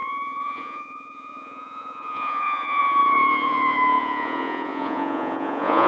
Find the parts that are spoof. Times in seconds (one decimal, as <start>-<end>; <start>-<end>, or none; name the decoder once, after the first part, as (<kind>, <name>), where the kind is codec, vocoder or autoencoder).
0.0-5.9 (vocoder, Vocos)